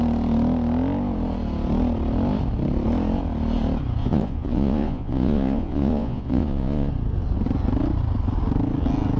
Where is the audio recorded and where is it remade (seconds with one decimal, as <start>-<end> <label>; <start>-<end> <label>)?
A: 0.0-4.0 recorded; 4.0-6.9 remade; 6.9-9.2 recorded